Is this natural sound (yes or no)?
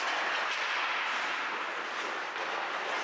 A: yes